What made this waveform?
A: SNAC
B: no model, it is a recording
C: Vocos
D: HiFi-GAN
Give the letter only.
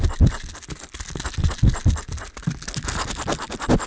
B